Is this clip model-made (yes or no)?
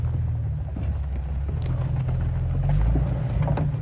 no